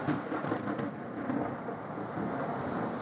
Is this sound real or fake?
real